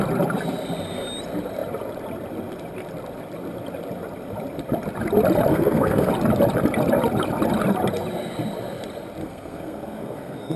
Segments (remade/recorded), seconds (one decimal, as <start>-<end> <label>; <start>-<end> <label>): 0.0-5.5 recorded; 5.5-6.1 remade; 6.1-9.2 recorded; 9.2-10.6 remade